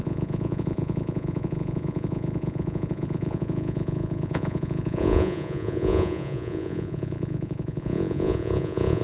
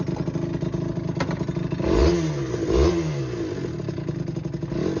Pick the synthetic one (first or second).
first